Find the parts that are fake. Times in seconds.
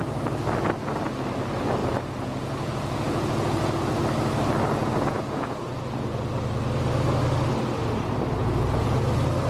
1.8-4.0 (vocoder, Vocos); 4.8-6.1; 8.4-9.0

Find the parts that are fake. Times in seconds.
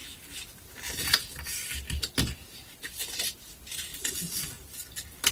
none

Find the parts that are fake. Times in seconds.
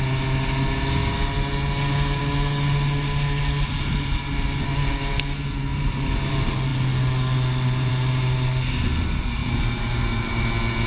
5.7-6.3 (vocoder, BigVGAN v2); 9.4-10.4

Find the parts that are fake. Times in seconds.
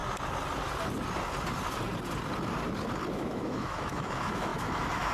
3.1-5.1 (autoencoder, DAC-VAE)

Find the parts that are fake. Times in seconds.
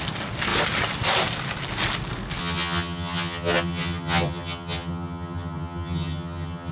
2.4-6.7 (vocoder, HiFi-GAN)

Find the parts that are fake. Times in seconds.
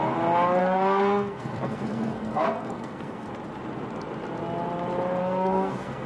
0.6-3.3 (codec, SNAC); 5.2-6.1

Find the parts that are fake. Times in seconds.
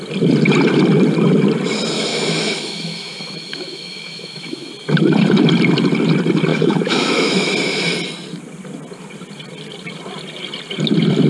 2.1-4.7 (autoencoder, DAC-VAE); 6.5-7.5